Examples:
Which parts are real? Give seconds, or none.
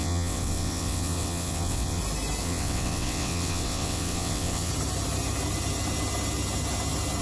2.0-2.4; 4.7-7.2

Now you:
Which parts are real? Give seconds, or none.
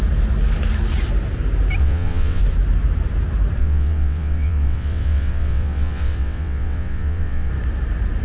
0.0-1.8; 2.4-3.6; 7.5-8.2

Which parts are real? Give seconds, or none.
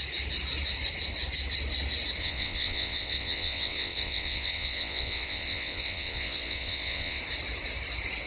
0.0-2.2; 7.2-8.3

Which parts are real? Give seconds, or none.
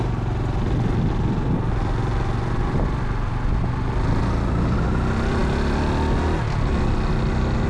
0.0-7.7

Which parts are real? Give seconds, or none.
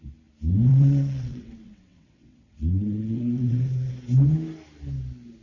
0.0-0.7; 3.9-5.4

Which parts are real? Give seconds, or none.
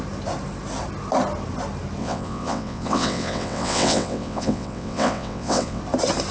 0.0-2.0; 5.8-6.3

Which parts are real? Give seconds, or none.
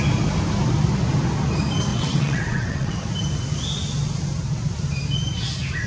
0.0-1.9; 2.9-5.9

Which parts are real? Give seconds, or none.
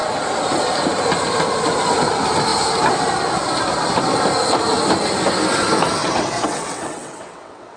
0.0-6.0